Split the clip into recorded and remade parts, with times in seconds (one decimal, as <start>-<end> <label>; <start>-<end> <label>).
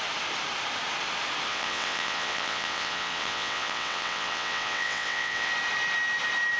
0.0-1.5 recorded; 1.5-5.5 remade; 5.5-6.6 recorded